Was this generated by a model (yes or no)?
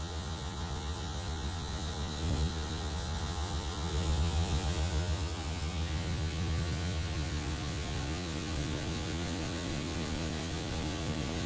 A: yes